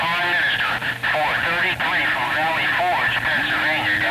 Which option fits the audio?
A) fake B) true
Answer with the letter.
B